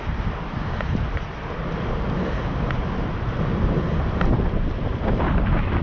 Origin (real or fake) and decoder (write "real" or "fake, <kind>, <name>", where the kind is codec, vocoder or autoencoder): real